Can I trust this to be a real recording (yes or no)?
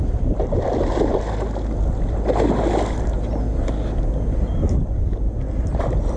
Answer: yes